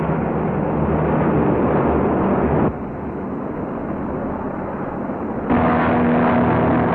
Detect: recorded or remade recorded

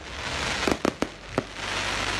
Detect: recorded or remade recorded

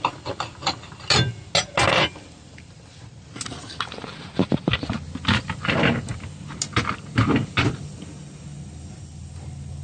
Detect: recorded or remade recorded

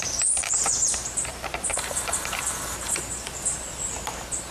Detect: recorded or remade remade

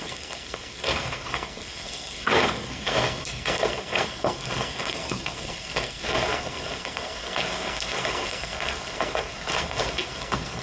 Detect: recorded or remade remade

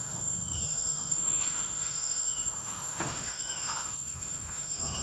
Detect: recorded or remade remade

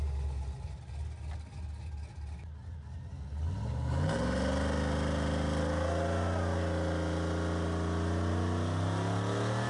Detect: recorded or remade recorded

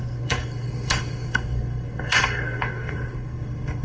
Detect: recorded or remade remade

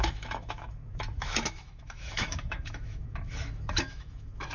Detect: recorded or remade remade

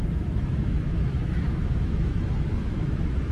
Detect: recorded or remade remade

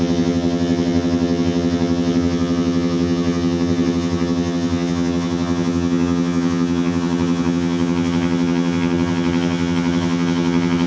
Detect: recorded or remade remade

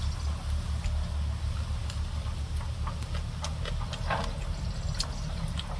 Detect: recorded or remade recorded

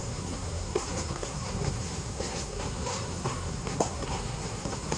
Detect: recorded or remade remade